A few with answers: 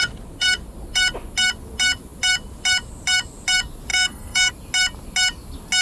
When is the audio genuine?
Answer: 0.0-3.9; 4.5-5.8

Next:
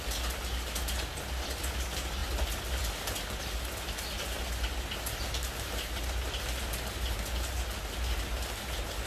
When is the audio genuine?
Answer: 0.0-9.1

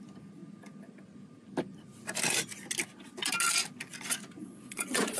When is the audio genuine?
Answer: 0.0-4.4